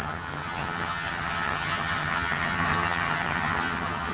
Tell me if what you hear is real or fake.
fake